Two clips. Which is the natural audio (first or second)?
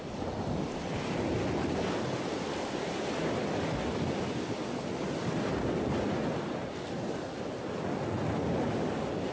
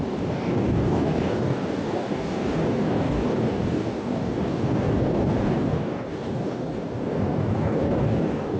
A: first